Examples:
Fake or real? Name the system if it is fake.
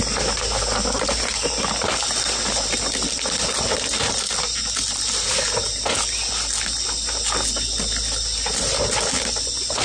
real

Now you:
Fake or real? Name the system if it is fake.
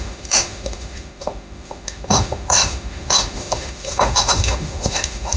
fake, autoencoder, DAC-VAE